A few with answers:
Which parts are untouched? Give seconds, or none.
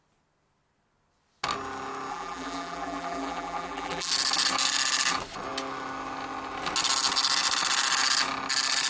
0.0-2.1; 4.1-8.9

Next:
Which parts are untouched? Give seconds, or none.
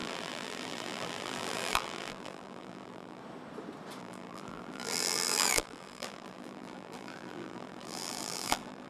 3.2-4.0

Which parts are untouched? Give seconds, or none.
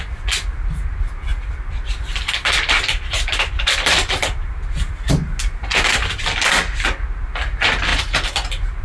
0.0-1.3; 4.9-7.9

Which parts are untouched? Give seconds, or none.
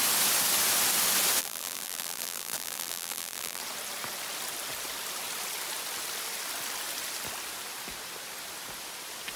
0.0-1.4; 3.6-9.4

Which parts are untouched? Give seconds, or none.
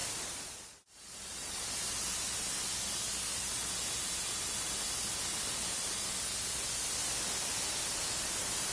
1.6-8.7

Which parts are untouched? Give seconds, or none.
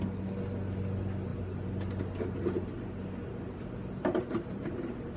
0.0-3.8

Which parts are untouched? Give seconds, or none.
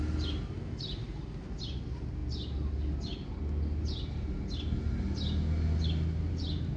0.0-6.8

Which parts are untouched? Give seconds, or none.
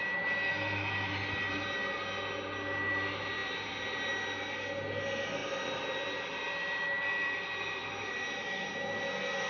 0.0-9.5